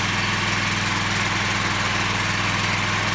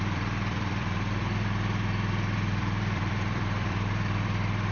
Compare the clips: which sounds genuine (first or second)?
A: first